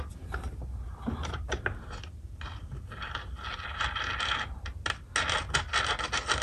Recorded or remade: recorded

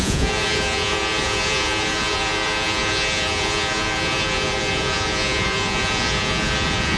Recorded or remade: remade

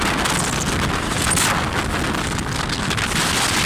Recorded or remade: recorded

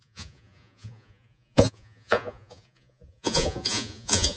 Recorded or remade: remade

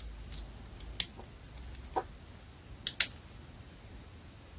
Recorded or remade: recorded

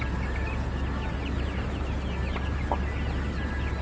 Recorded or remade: recorded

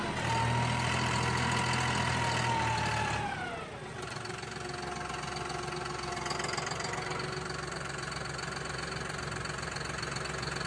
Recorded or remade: recorded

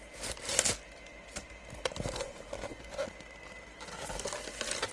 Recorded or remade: recorded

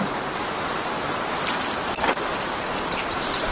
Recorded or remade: recorded